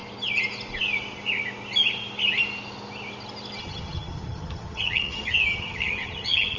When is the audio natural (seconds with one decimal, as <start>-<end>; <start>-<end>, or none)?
0.0-3.6